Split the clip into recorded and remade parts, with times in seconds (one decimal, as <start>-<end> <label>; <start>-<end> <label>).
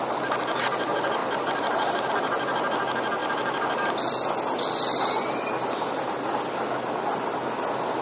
0.0-1.2 recorded; 1.2-2.1 remade; 2.1-3.2 recorded; 3.2-3.9 remade; 3.9-8.0 recorded